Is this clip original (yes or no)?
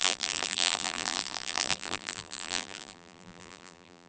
no